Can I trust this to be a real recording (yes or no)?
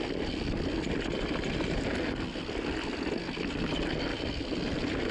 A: yes